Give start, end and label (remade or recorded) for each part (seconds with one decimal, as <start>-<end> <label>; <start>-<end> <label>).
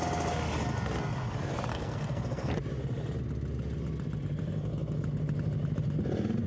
0.0-1.7 recorded; 1.7-2.5 remade; 2.5-6.5 recorded